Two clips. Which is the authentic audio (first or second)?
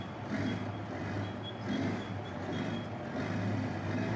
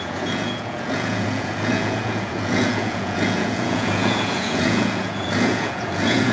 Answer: first